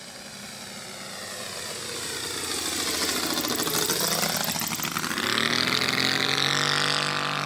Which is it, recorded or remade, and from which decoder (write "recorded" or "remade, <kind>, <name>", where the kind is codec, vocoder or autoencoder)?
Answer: recorded